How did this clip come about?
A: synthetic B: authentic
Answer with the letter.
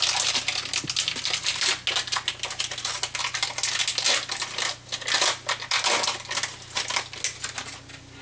B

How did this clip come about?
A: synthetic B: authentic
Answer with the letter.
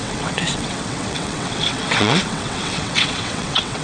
A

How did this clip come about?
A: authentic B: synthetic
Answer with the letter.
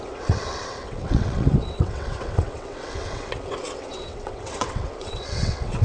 B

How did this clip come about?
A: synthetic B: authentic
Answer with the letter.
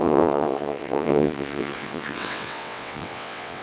A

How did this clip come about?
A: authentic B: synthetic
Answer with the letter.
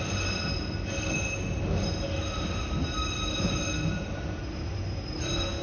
A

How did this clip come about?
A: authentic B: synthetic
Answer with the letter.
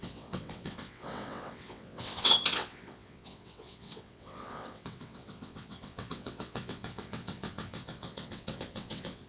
B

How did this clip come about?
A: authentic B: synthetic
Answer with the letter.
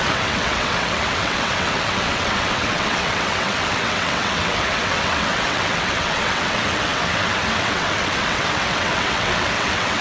B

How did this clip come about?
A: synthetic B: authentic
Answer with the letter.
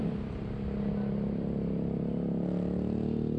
B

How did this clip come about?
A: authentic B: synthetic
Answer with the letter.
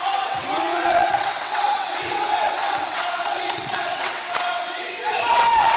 B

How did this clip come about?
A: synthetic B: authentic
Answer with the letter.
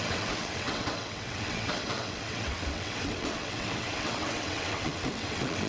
A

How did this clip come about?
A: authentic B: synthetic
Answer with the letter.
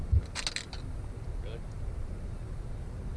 A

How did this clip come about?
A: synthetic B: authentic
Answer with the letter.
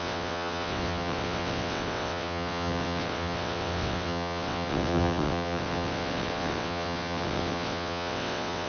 A